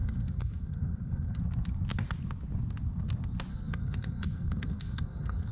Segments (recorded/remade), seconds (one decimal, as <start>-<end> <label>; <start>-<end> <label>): 0.0-1.4 remade; 1.4-3.5 recorded; 3.5-5.5 remade